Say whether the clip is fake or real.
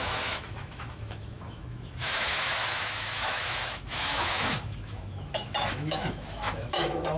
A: fake